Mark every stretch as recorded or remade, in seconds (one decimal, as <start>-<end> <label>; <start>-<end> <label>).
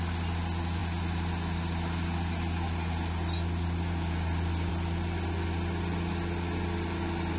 0.0-7.4 recorded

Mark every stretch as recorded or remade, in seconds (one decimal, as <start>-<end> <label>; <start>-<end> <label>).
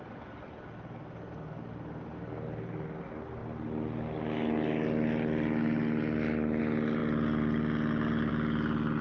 0.0-9.0 recorded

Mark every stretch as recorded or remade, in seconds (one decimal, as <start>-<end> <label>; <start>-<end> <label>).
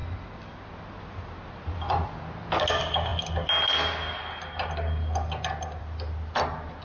0.0-6.8 recorded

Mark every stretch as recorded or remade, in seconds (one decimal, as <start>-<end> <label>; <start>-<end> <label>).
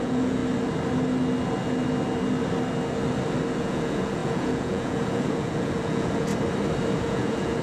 0.0-0.4 remade; 0.4-3.6 recorded; 3.6-6.3 remade; 6.3-7.0 recorded; 7.0-7.6 remade